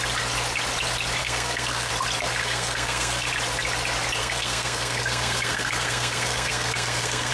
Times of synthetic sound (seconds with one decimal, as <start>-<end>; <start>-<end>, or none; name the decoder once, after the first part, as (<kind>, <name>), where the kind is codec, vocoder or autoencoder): 1.2-1.9 (codec, SNAC); 2.4-3.3; 4.2-7.3